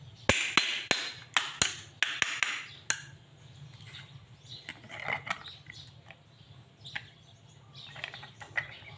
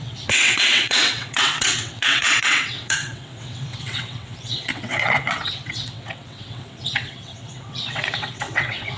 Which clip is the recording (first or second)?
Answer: first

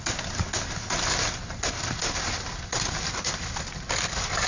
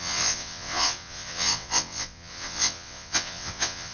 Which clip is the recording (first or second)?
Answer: first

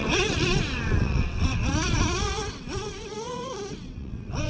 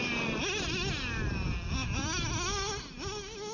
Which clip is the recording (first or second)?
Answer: second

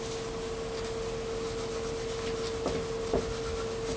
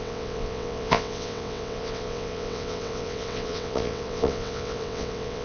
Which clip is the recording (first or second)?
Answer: first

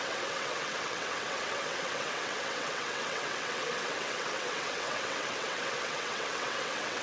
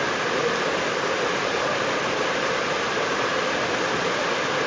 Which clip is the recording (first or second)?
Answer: second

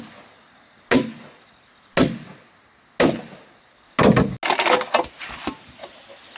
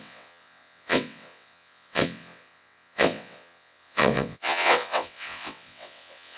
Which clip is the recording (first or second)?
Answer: first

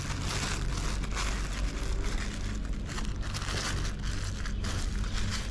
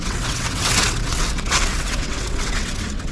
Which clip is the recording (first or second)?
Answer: first